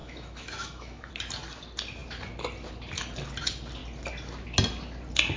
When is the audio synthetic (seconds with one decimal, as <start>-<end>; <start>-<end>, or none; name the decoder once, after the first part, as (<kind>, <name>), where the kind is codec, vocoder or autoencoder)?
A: 0.0-1.1 (autoencoder, DAC-VAE)